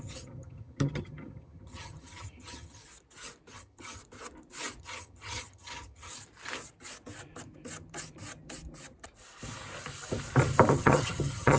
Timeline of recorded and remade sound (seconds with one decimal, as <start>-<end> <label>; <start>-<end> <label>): 0.0-2.8 remade; 2.8-3.5 recorded; 3.5-4.0 remade; 4.0-4.8 recorded; 4.8-6.1 remade; 6.1-10.7 recorded; 10.7-11.6 remade